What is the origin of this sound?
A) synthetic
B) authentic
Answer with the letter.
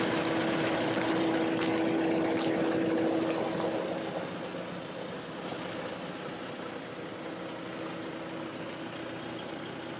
B